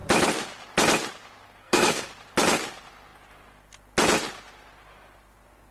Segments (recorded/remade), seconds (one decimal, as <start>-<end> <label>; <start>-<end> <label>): 0.0-1.6 recorded; 1.6-2.1 remade; 2.1-5.7 recorded

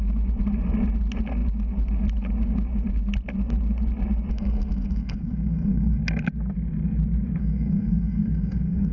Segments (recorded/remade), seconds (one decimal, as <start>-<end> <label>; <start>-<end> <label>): 0.0-4.3 recorded; 4.3-6.0 remade; 6.0-7.4 recorded; 7.4-8.9 remade